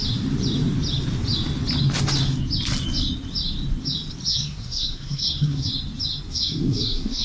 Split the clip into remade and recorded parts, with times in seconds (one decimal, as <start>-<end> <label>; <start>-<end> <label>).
0.0-4.3 recorded; 4.3-5.7 remade; 5.7-6.3 recorded; 6.3-7.2 remade